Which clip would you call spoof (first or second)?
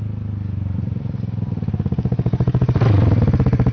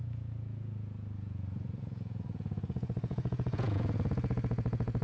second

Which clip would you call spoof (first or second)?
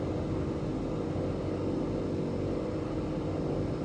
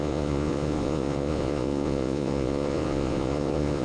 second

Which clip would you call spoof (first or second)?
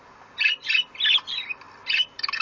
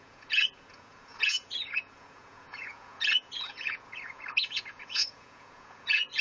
second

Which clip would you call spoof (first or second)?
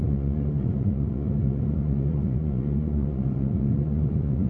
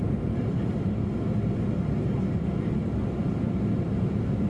first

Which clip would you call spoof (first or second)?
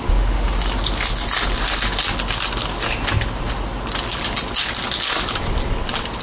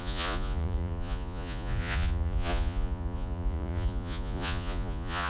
second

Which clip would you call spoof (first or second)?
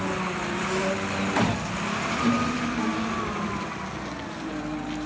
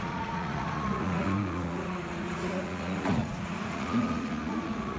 second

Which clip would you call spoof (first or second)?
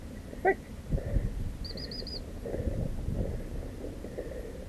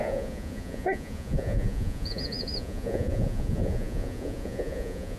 second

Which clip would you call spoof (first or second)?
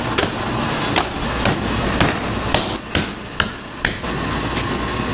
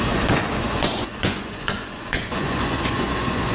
second